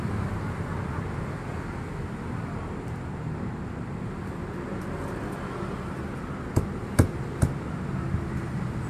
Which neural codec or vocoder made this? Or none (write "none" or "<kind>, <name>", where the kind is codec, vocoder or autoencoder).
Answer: none